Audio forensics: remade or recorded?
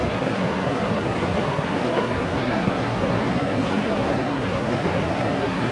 remade